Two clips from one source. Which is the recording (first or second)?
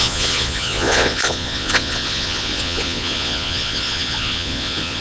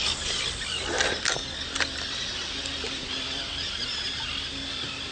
second